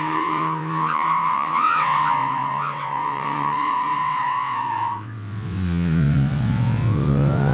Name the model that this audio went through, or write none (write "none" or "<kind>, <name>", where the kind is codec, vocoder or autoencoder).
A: vocoder, WaveNeXt